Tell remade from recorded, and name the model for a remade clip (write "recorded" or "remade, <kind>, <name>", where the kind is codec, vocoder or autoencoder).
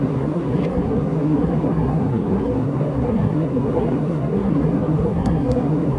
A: remade, codec, SNAC